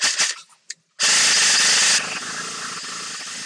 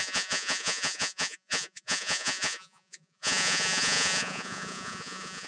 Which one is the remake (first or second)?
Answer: second